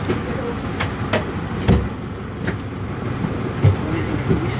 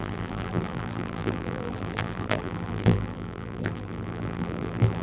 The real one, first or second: first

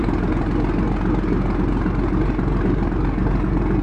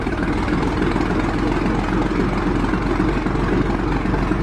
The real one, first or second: second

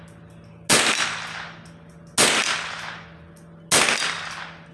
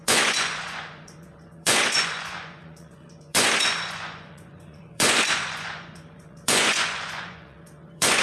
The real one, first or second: first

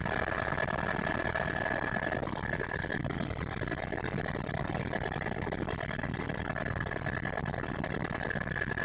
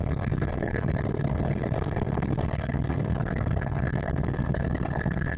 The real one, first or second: first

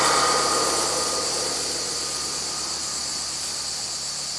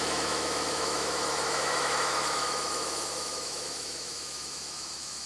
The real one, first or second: first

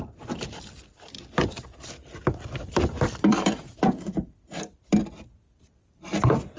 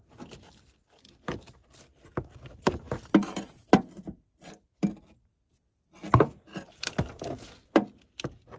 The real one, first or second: second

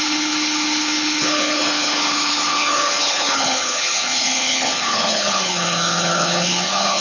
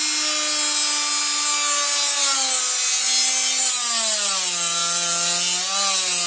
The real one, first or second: second